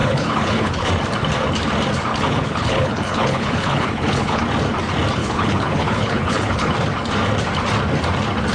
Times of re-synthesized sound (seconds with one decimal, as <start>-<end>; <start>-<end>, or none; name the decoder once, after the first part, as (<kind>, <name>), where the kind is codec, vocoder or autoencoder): 0.0-0.9 (codec, HILCodec); 2.1-4.4; 5.2-6.7